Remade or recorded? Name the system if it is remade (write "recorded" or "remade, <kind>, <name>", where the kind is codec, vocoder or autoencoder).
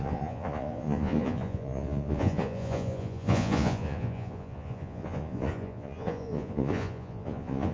remade, vocoder, Vocos